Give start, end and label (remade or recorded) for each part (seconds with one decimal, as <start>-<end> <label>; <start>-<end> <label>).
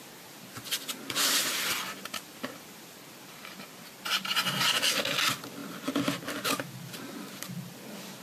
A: 0.0-8.2 remade